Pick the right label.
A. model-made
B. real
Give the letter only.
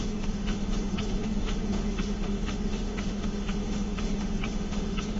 A